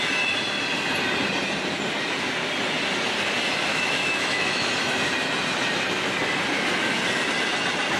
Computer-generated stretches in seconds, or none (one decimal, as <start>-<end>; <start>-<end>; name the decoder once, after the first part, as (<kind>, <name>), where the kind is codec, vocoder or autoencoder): 3.7-4.7 (autoencoder, DAC-VAE)